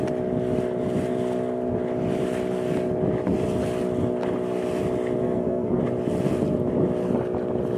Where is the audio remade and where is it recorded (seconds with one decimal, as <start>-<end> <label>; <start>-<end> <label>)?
0.0-5.2 recorded; 5.2-5.8 remade; 5.8-7.8 recorded